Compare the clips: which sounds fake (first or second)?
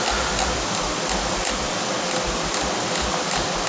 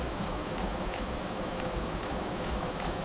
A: second